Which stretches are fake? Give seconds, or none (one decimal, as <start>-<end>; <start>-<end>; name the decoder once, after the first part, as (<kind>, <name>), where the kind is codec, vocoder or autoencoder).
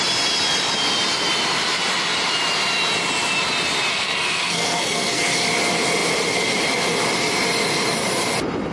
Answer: 3.9-5.2 (codec, SNAC)